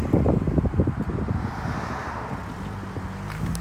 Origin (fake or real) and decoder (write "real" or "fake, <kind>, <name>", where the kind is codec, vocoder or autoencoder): real